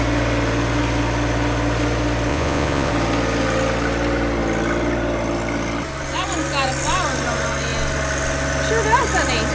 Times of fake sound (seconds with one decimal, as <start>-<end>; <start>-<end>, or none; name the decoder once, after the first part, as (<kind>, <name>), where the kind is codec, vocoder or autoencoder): 2.3-2.9 (vocoder, Vocos)